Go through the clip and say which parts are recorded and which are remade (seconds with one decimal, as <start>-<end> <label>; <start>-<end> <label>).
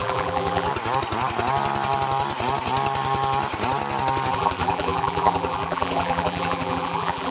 0.0-0.7 remade; 0.7-4.3 recorded; 4.3-7.3 remade